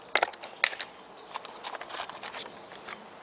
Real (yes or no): yes